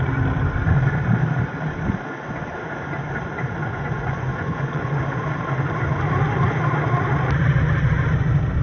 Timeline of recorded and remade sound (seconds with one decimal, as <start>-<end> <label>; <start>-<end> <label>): 0.0-3.6 recorded; 3.6-5.0 remade; 5.0-8.6 recorded